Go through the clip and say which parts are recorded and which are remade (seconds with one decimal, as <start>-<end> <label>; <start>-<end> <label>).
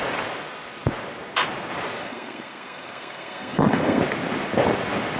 0.0-2.0 recorded; 2.0-4.0 remade; 4.0-5.2 recorded